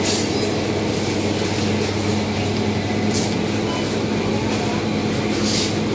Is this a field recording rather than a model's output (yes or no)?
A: yes